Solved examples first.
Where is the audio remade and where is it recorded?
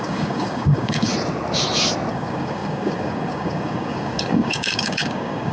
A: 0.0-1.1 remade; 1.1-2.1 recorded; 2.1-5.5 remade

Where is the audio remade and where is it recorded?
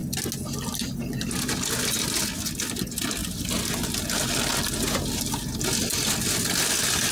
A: 0.0-7.1 recorded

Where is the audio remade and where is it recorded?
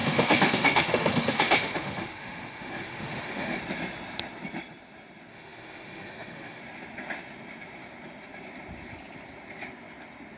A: 0.0-3.6 remade; 3.6-5.3 recorded; 5.3-6.6 remade; 6.6-10.4 recorded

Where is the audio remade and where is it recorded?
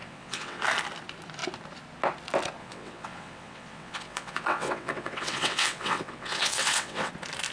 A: 0.0-0.6 remade; 0.6-2.6 recorded; 2.6-7.1 remade; 7.1-7.5 recorded